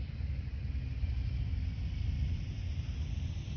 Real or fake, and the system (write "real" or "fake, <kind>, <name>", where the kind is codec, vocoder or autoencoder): real